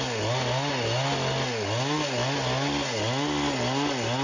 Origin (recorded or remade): recorded